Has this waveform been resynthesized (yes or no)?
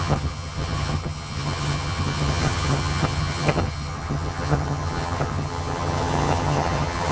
yes